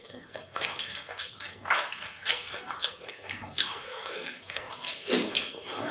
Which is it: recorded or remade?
remade